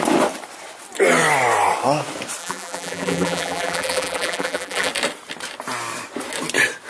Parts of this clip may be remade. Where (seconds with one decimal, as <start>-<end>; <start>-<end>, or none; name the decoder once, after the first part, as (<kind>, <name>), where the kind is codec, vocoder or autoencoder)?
2.4-4.9 (vocoder, BigVGAN v2)